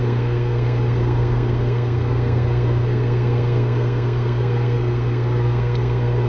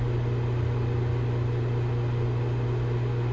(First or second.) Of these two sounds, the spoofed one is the first